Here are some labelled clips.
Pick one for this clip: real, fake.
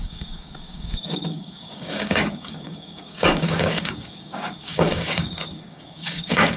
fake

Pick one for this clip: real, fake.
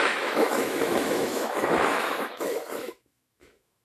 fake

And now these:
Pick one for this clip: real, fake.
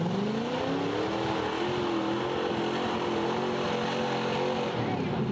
real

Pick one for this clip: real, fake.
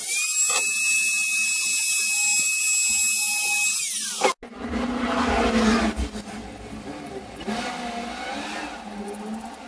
real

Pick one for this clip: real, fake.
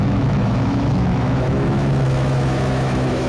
fake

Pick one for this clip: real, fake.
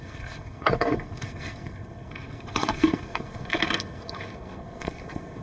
fake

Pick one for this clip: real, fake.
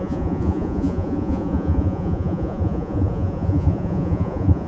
fake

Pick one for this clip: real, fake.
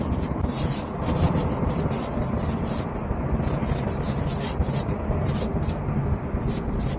fake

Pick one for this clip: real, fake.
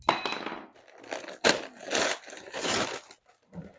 real